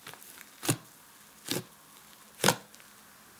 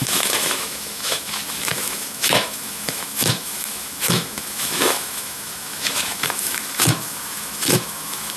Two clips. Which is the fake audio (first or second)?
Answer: second